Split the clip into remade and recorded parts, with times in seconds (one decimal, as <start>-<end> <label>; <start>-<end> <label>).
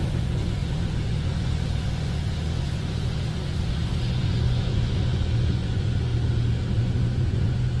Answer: 0.0-6.1 remade; 6.1-6.8 recorded; 6.8-7.8 remade